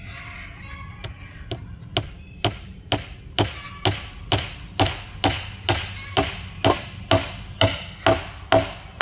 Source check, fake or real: real